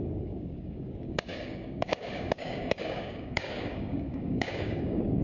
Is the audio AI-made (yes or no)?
yes